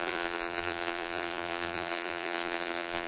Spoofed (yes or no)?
yes